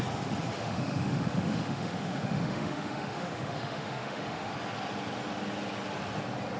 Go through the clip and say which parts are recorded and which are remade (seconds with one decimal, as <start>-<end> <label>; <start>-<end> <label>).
0.0-0.5 recorded; 0.5-4.5 remade; 4.5-6.6 recorded